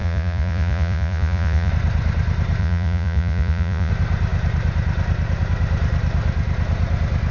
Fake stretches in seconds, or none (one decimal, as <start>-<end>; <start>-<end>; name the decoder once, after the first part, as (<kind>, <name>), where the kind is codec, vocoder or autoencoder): 0.0-1.7 (vocoder, Vocos); 2.6-3.9